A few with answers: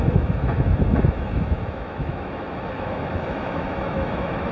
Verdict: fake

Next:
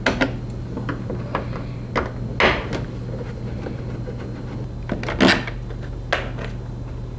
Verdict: real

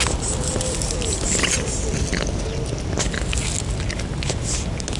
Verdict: real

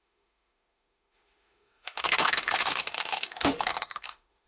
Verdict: fake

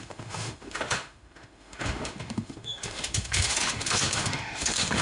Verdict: fake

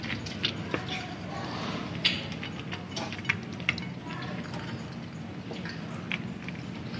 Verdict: real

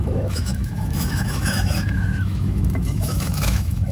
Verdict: fake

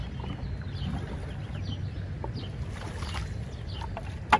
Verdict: real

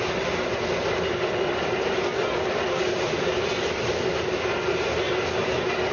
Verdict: real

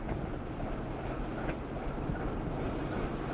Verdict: real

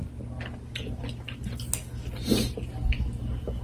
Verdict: real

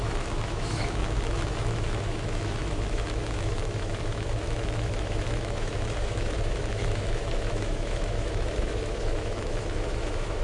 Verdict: fake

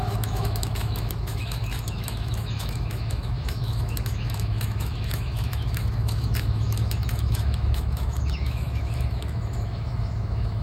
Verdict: fake